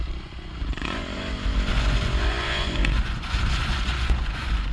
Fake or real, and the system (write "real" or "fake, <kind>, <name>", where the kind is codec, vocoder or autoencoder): fake, vocoder, Vocos